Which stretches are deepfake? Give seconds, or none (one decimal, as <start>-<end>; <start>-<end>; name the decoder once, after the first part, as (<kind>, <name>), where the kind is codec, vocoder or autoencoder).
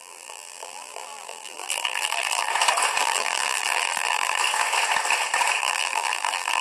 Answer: 0.0-2.5 (vocoder, BigVGAN v2); 3.0-4.4; 5.6-6.6